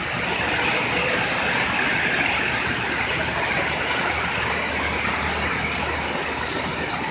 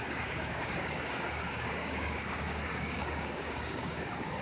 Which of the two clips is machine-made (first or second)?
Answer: second